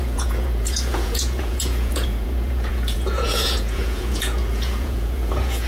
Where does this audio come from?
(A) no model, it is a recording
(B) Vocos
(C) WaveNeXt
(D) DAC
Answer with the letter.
B